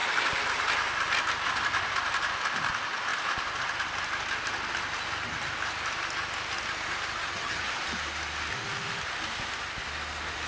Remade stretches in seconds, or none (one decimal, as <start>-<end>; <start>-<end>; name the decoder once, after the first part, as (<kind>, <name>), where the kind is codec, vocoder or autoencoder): 7.2-7.7 (vocoder, HiFi-GAN)